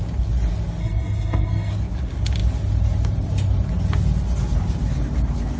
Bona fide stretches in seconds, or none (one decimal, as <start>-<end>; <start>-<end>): 0.0-0.8; 1.7-5.6